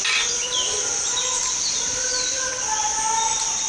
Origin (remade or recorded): recorded